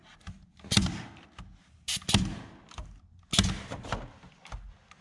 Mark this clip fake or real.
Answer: real